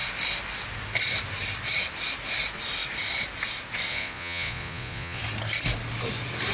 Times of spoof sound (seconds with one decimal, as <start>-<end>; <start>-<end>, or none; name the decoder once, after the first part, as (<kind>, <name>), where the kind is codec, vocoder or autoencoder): 3.9-5.2 (vocoder, Vocos)